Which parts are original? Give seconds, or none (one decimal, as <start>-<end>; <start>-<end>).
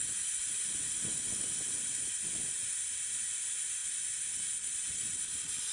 0.0-5.7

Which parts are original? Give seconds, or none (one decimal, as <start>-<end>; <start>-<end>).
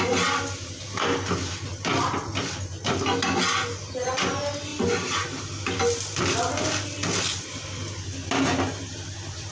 0.0-1.7; 2.3-4.7; 5.4-8.9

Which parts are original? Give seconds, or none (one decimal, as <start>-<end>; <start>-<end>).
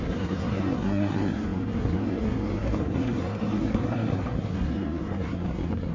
none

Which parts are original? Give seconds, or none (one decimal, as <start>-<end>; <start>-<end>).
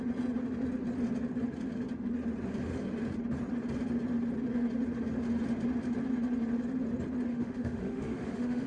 0.0-7.3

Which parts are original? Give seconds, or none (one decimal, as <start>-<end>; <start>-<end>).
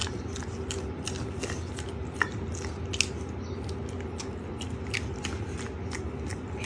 0.0-6.7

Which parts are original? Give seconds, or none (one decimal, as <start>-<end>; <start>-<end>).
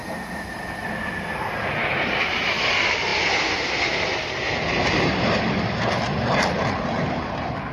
0.0-7.7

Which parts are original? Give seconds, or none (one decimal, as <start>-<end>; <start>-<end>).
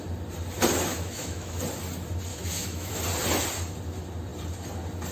0.0-0.9; 1.6-2.3; 3.0-5.1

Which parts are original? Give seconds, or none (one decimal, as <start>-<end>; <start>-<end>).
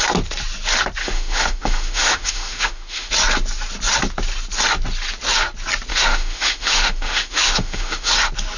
0.0-1.0; 3.1-5.9; 8.1-8.6